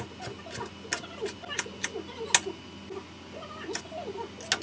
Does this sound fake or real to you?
real